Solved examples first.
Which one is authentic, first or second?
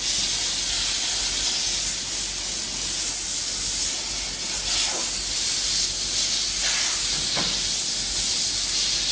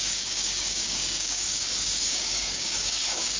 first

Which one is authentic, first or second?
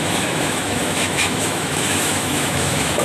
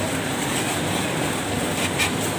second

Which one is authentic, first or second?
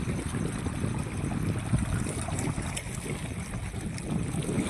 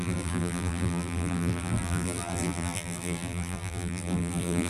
first